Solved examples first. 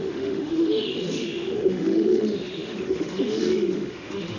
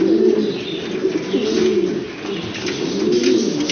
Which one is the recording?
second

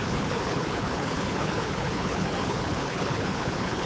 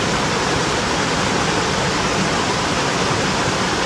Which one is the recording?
second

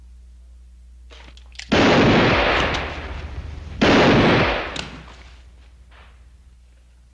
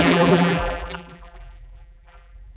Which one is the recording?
first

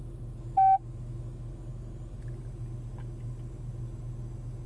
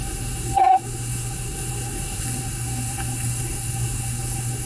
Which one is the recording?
first